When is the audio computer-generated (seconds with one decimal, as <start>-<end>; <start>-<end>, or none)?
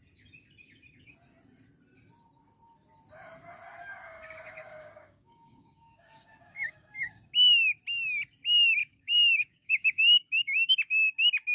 3.9-7.2; 8.8-10.7